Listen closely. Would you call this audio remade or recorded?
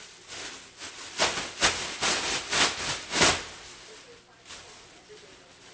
recorded